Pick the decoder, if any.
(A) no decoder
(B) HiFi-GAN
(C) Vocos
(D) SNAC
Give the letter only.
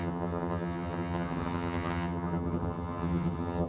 B